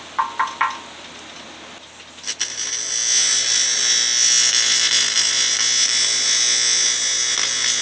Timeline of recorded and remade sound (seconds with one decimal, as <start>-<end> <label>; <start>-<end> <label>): 0.0-7.8 recorded